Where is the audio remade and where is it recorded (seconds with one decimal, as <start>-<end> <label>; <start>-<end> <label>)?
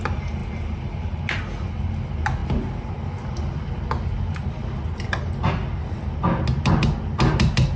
0.0-7.8 recorded